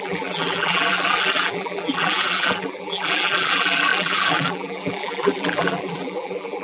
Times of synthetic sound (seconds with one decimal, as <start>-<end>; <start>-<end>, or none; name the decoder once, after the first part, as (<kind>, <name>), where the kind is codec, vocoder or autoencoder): 0.0-6.6 (vocoder, BigVGAN v2)